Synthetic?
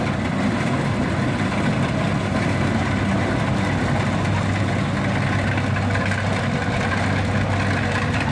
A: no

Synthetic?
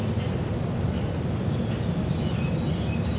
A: no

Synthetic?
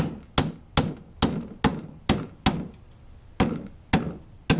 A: no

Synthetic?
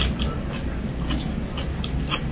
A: no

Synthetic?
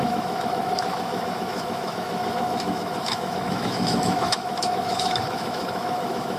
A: yes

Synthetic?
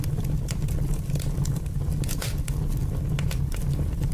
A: no